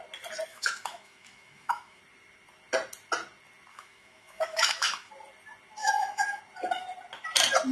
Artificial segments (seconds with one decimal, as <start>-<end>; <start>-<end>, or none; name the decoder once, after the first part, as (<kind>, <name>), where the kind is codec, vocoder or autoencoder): 0.5-2.0 (autoencoder, DAC-VAE); 3.7-5.1; 5.8-6.4